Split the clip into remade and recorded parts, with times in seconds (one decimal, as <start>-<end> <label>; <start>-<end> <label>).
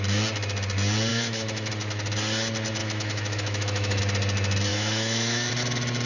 0.0-1.1 recorded; 1.1-1.7 remade; 1.7-2.8 recorded; 2.8-4.0 remade; 4.0-4.7 recorded; 4.7-5.5 remade; 5.5-6.1 recorded